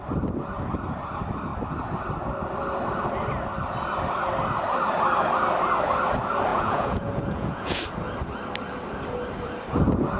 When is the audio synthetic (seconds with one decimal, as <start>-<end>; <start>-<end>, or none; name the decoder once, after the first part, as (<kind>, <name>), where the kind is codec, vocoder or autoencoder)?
6.5-7.8 (vocoder, Vocos)